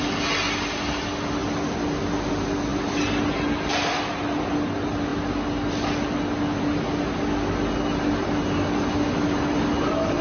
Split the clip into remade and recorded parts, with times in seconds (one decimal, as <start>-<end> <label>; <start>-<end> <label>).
0.0-10.2 recorded